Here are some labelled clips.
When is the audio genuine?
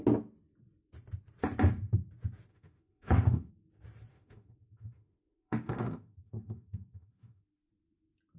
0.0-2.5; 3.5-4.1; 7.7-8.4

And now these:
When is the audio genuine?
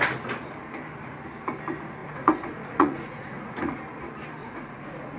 0.0-2.0; 3.8-4.4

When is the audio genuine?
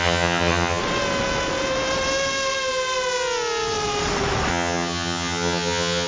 0.8-4.5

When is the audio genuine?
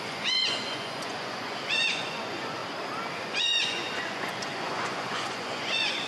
2.6-3.1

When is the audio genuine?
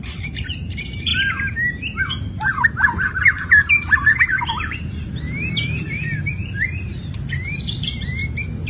1.1-2.0; 2.5-3.1; 8.2-8.7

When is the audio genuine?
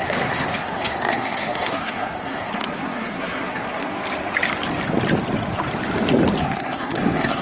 3.9-6.4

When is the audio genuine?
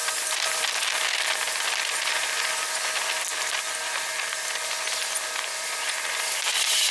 0.7-6.9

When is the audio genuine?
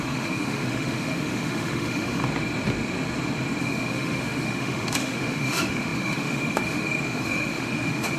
2.2-3.6